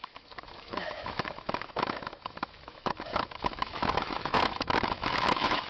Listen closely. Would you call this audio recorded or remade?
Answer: remade